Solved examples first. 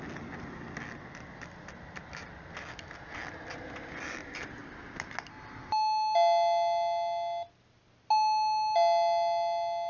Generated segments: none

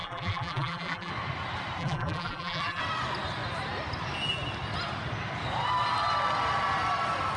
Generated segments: 0.0-1.1 (vocoder, BigVGAN v2); 1.8-2.8

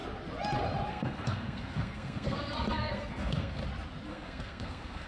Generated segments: 0.9-3.6 (codec, SNAC); 4.1-5.1